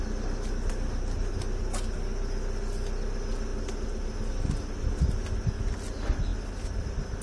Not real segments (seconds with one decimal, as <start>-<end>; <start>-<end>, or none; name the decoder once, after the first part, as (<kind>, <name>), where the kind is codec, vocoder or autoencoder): none